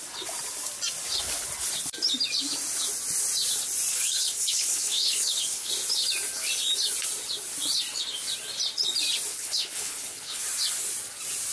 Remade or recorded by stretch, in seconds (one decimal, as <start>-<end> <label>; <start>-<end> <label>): 0.0-3.9 recorded; 3.9-5.7 remade; 5.7-9.3 recorded; 9.3-10.4 remade; 10.4-11.5 recorded